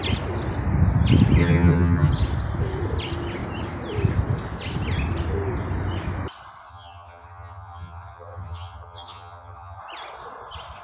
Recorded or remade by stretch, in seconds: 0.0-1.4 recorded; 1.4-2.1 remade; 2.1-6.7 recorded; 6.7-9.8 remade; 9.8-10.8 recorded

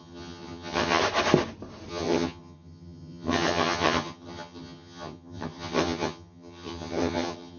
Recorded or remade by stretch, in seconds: 0.0-1.0 remade; 1.0-1.9 recorded; 1.9-7.6 remade